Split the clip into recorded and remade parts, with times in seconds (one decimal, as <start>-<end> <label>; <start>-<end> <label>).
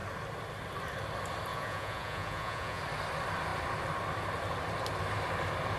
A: 0.0-1.5 recorded; 1.5-2.8 remade; 2.8-5.8 recorded